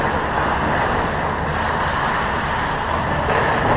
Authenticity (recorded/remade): recorded